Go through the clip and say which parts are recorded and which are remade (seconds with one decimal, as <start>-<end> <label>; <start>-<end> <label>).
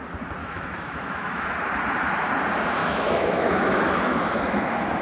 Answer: 0.0-0.4 recorded; 0.4-1.5 remade; 1.5-2.8 recorded; 2.8-5.0 remade